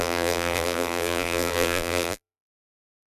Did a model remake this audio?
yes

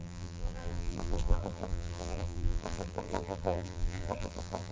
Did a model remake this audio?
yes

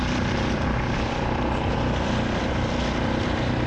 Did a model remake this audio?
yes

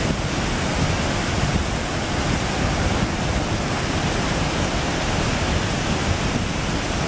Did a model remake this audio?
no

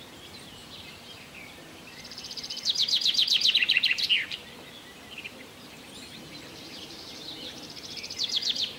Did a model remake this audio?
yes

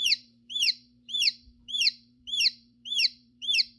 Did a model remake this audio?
yes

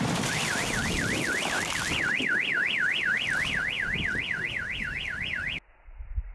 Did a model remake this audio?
no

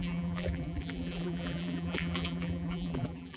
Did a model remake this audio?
yes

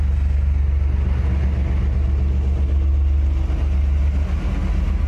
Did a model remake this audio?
no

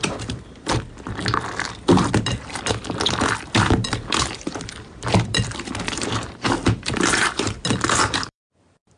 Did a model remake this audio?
yes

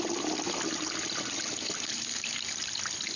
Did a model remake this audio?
no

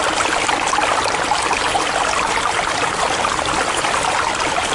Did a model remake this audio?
no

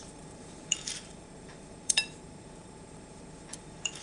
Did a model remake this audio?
yes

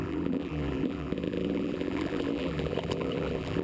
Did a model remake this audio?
yes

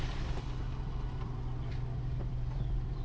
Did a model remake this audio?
yes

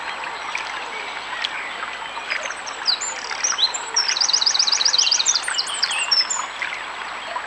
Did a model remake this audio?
yes